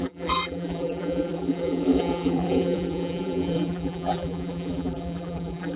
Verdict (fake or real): fake